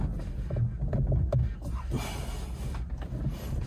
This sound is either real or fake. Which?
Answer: real